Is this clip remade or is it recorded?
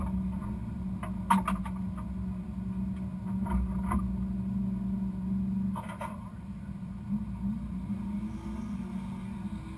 recorded